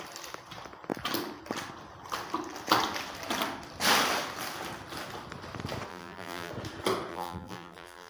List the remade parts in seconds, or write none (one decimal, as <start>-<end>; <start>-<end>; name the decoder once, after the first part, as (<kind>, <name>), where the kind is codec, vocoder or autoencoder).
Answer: 5.9-6.5 (vocoder, BigVGAN v2); 7.1-8.1